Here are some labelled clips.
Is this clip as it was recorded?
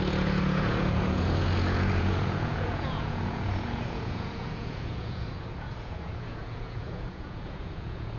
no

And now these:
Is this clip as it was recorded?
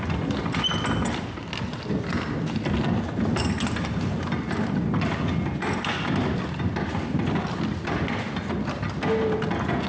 yes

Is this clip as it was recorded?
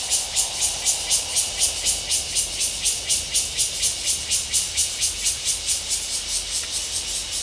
yes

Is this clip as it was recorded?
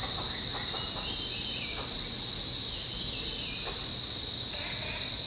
yes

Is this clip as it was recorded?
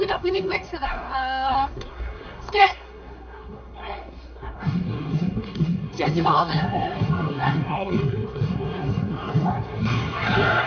no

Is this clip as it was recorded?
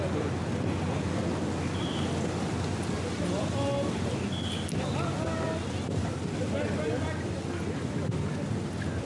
yes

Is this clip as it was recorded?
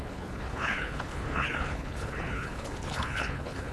no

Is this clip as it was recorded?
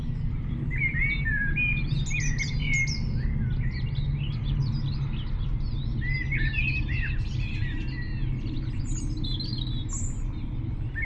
yes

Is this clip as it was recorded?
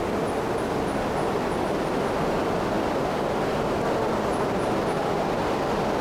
yes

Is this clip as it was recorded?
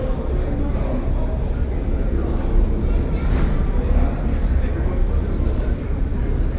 yes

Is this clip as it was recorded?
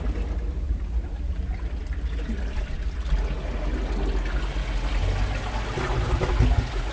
yes